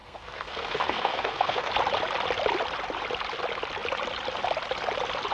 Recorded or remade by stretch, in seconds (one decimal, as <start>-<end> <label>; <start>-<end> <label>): 0.0-1.7 remade; 1.7-5.3 recorded